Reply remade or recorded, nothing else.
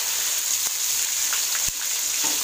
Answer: recorded